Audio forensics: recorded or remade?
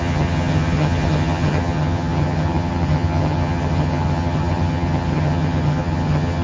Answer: remade